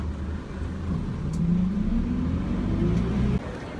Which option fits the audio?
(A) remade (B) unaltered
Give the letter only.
B